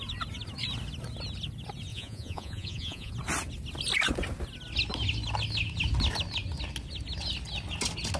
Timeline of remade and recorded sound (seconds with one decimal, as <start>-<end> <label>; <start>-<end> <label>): 0.0-1.9 recorded; 1.9-3.1 remade; 3.1-8.2 recorded